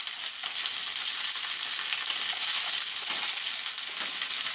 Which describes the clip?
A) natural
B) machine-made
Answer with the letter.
A